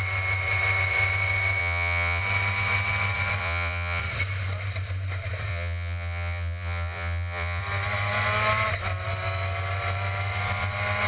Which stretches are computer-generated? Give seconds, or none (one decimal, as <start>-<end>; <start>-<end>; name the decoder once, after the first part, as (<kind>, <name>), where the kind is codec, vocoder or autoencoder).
1.6-2.2 (vocoder, Vocos); 3.4-4.0; 5.5-7.6